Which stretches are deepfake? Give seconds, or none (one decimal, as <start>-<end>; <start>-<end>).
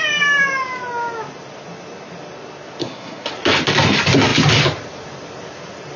2.8-3.3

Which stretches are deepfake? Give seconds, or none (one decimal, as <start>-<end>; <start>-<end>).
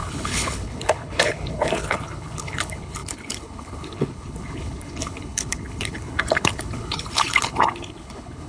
0.0-8.5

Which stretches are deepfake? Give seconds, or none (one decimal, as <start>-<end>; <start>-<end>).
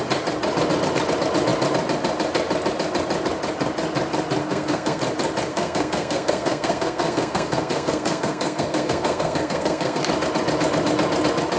4.4-5.0; 5.5-10.0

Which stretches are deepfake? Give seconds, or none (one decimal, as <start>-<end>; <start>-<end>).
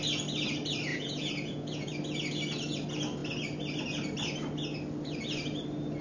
0.9-1.9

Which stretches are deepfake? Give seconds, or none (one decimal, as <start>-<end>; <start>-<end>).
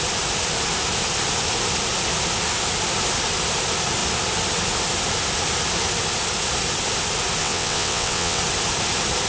7.4-8.4